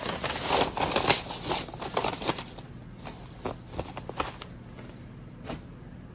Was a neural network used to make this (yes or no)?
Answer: no